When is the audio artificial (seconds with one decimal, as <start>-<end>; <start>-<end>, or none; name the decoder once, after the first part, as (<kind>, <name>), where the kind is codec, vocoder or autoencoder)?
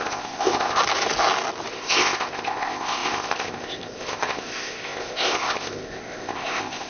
0.0-0.8 (codec, ZipCodec); 1.7-6.9